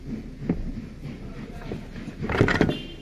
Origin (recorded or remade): recorded